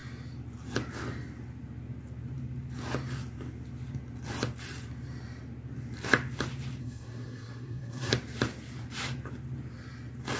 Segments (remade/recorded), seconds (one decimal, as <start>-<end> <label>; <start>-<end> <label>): 0.0-6.8 recorded; 6.8-8.1 remade; 8.1-10.4 recorded